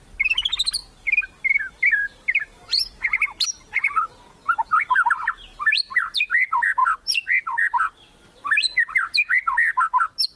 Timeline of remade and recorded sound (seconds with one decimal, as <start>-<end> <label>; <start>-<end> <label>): 0.0-10.4 recorded